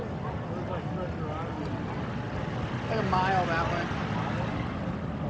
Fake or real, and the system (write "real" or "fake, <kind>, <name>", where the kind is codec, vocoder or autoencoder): real